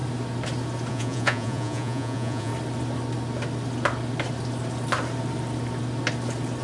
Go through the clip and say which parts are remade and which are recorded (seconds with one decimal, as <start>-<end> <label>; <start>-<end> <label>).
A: 0.0-0.9 recorded; 0.9-2.5 remade; 2.5-6.6 recorded